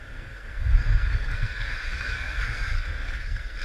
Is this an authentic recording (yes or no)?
no